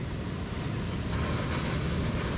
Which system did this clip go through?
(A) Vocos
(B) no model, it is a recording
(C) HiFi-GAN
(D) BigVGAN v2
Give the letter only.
B